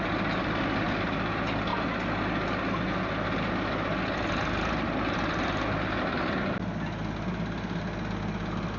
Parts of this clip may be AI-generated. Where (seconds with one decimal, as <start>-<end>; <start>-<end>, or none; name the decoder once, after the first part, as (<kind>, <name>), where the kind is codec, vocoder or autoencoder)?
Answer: none